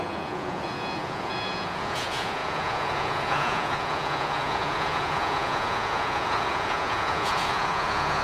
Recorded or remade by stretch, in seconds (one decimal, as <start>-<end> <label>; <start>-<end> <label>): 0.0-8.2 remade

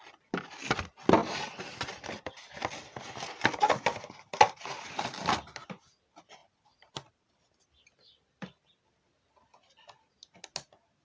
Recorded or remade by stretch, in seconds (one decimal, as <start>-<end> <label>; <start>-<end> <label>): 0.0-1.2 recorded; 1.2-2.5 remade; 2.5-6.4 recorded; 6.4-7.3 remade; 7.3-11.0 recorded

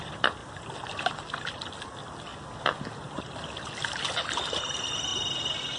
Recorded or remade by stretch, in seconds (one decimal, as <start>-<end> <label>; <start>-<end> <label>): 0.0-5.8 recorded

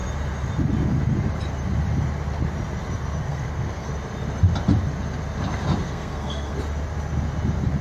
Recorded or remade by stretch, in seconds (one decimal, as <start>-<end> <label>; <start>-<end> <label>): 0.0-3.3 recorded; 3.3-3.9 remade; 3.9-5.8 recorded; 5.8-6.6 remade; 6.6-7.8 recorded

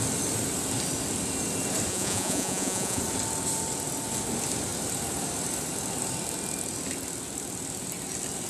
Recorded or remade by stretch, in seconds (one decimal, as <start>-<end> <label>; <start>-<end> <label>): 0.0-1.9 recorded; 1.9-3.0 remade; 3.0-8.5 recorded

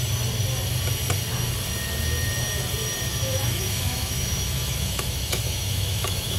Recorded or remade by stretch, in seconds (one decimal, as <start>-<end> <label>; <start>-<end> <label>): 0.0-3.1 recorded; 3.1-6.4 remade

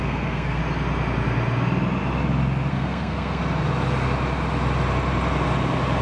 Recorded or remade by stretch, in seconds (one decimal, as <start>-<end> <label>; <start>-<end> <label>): 0.0-0.6 remade; 0.6-2.7 recorded; 2.7-3.4 remade; 3.4-6.0 recorded

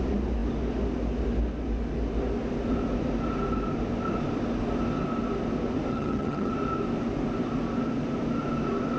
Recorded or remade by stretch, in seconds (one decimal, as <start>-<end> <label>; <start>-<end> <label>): 0.0-5.9 recorded; 5.9-6.5 remade; 6.5-9.0 recorded